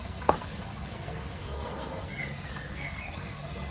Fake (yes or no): yes